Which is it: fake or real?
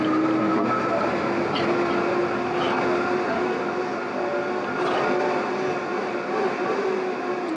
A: real